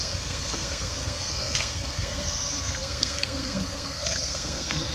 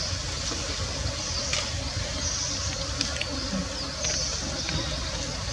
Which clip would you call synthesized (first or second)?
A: first